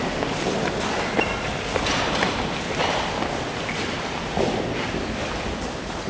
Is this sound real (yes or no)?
yes